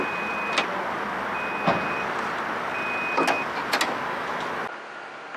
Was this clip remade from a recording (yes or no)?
no